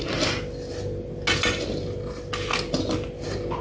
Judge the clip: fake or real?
real